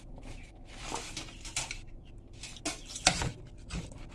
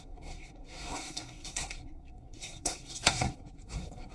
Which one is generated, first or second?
second